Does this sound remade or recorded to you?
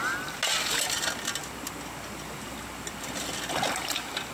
recorded